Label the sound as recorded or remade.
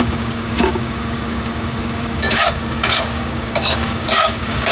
remade